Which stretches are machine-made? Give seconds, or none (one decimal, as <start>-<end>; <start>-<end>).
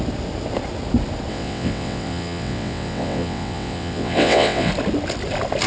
1.3-4.7